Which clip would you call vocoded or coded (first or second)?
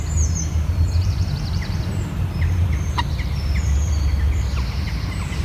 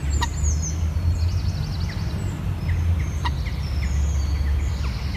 first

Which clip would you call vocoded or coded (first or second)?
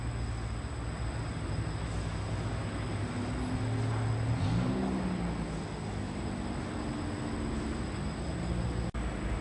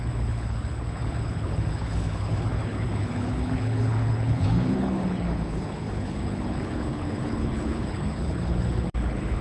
second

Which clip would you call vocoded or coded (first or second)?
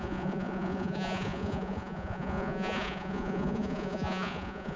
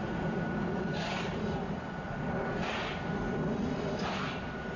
first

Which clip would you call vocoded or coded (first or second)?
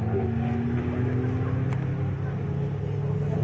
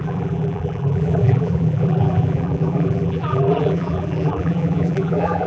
second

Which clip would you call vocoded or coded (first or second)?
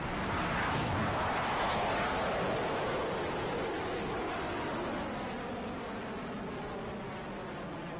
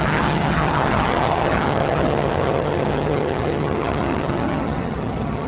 second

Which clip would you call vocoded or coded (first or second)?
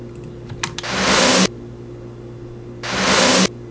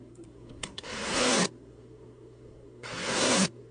second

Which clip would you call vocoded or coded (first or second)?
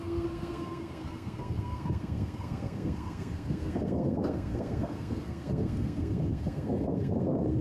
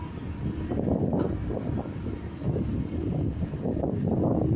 first